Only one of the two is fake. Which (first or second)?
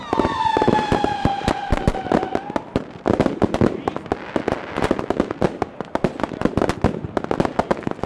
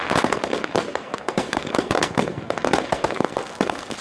second